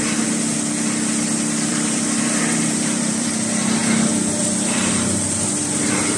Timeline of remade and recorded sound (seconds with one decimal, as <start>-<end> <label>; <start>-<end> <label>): 0.0-1.7 recorded; 1.7-3.3 remade; 3.3-6.2 recorded